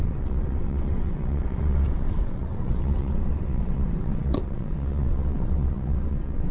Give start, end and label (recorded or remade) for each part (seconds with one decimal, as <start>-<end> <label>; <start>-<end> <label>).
0.0-6.5 remade